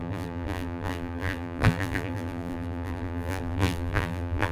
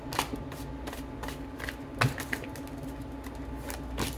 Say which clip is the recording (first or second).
second